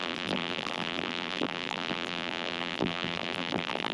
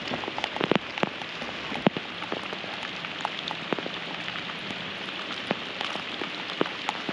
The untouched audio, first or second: second